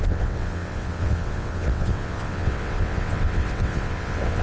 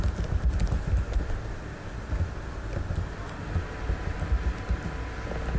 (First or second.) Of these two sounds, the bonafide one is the second